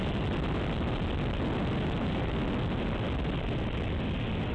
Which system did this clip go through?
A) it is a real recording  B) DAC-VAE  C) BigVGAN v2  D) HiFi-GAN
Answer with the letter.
A